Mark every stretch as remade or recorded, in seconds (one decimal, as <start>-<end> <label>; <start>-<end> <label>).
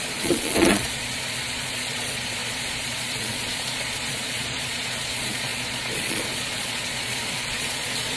0.0-8.2 remade